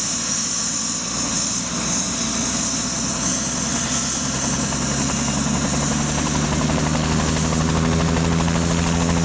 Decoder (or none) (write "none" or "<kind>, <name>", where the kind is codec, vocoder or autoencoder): none